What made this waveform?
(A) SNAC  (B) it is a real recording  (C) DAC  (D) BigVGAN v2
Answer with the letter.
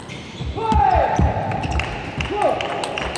B